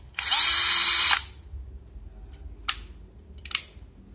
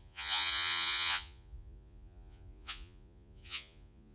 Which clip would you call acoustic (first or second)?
first